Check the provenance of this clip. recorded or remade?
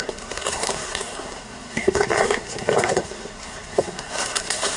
remade